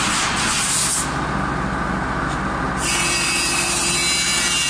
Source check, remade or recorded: recorded